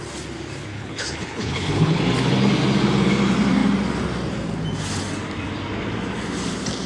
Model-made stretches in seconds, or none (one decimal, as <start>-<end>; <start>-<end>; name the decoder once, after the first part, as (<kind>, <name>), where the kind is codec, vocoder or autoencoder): 0.7-2.0 (codec, HILCodec)